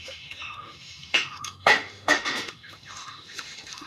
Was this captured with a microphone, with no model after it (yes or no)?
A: no